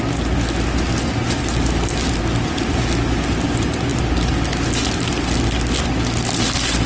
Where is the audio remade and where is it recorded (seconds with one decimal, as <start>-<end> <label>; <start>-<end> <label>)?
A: 0.0-6.9 recorded